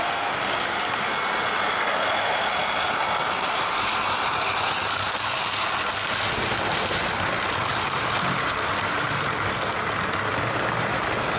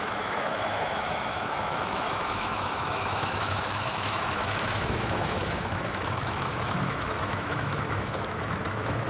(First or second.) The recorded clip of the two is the first